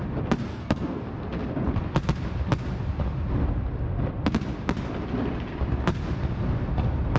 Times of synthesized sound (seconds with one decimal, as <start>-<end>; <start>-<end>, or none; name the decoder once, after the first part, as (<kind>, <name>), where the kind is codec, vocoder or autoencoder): 0.5-1.0 (codec, SNAC)